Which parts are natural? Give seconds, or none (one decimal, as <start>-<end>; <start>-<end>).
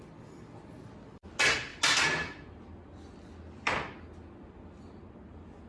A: 0.0-5.7